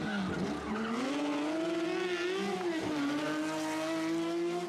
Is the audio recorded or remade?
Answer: recorded